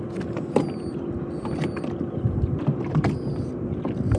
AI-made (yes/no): no